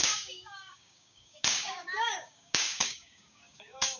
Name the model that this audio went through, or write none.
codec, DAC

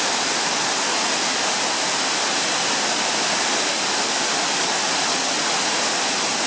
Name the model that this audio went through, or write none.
none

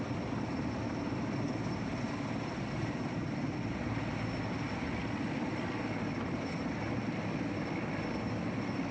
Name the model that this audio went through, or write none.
none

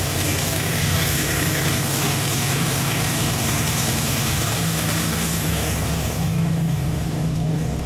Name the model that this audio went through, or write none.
codec, DAC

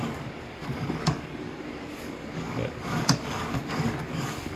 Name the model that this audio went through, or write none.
codec, DAC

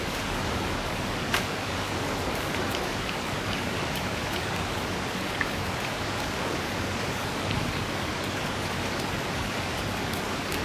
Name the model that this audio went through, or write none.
codec, DAC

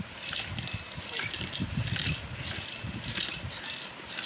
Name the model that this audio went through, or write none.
none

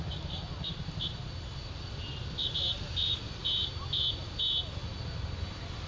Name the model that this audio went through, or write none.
none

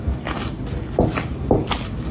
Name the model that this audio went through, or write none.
none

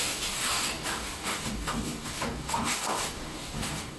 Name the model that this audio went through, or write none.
codec, DAC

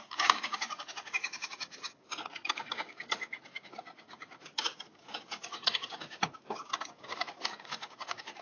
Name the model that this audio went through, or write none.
codec, DAC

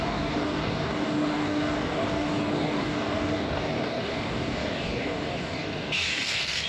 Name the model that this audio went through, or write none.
codec, DAC